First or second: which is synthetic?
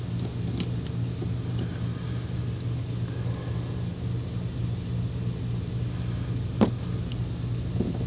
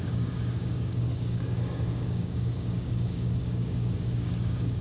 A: second